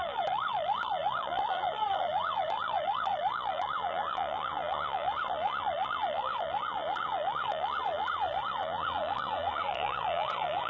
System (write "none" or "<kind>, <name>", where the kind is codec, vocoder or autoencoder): vocoder, Vocos